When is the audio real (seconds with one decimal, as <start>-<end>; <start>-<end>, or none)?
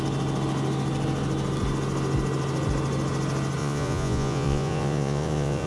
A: 0.0-3.6